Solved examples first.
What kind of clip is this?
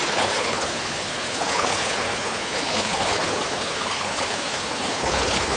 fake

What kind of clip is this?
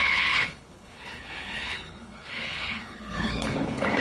fake